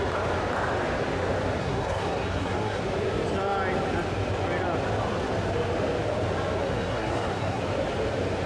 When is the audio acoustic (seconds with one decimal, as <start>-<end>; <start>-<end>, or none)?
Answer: 0.0-1.6; 2.8-6.6; 7.6-8.5